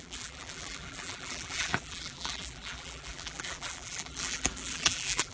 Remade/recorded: remade